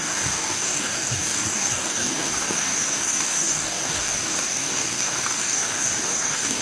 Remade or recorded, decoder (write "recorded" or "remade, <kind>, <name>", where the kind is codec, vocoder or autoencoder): remade, codec, DAC